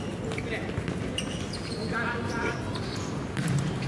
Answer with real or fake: real